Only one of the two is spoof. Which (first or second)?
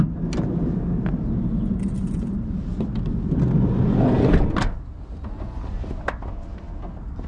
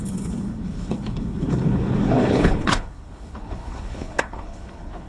second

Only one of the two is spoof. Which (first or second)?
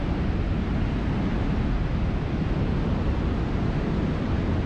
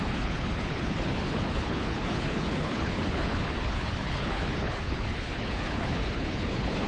second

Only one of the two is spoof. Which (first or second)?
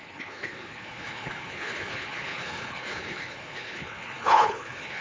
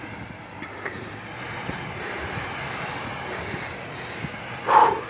first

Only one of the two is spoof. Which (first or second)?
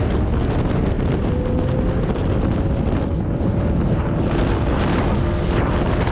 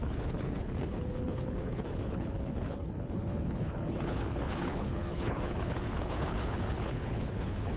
second